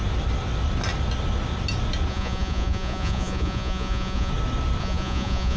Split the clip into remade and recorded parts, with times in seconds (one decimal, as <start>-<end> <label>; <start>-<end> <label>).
0.0-2.1 recorded; 2.1-4.3 remade; 4.3-4.8 recorded; 4.8-5.6 remade

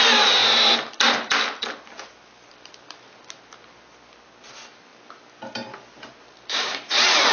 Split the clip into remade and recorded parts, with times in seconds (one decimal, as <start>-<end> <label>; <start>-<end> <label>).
0.0-7.3 recorded

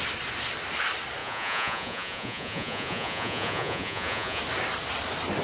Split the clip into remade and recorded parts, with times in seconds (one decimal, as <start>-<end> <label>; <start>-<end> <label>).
0.0-1.2 recorded; 1.2-4.4 remade; 4.4-5.4 recorded

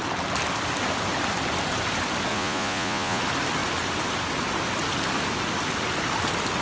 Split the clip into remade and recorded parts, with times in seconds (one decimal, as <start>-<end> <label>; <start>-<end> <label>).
0.0-2.3 recorded; 2.3-3.2 remade; 3.2-6.6 recorded

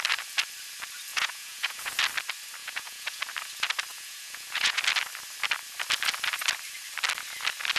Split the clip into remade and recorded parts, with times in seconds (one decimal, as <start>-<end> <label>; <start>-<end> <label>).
0.0-1.1 recorded; 1.1-1.9 remade; 1.9-2.6 recorded; 2.6-3.2 remade; 3.2-3.9 recorded; 3.9-4.8 remade; 4.8-7.8 recorded

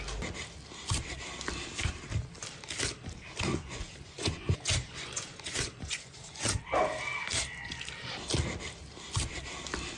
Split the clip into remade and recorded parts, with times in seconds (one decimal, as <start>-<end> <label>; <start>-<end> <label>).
0.0-3.5 recorded; 3.5-6.6 remade; 6.6-10.0 recorded

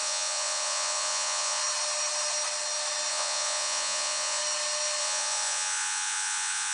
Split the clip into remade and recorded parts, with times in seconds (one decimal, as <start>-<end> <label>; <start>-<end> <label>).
0.0-1.6 remade; 1.6-3.1 recorded; 3.1-4.4 remade; 4.4-5.0 recorded; 5.0-6.7 remade

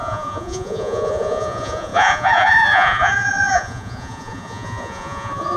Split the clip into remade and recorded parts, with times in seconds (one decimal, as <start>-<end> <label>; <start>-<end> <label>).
0.0-5.6 remade